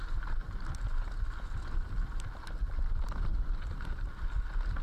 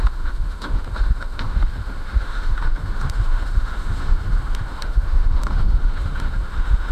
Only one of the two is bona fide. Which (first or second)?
first